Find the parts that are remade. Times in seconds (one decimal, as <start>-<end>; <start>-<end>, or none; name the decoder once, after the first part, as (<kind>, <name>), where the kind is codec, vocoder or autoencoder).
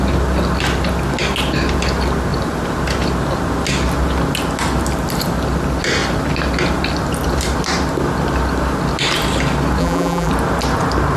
9.8-10.3 (vocoder, BigVGAN v2)